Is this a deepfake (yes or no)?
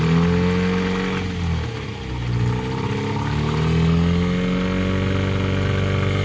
no